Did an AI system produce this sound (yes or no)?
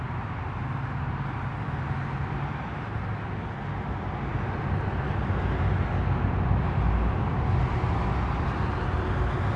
no